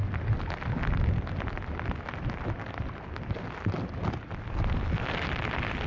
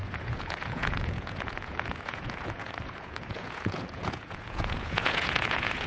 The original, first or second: first